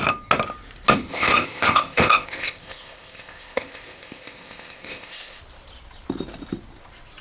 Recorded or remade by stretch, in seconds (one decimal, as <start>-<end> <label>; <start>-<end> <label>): 0.0-1.1 recorded; 1.1-5.4 remade; 5.4-7.2 recorded